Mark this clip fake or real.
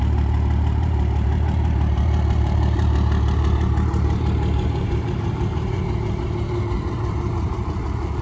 fake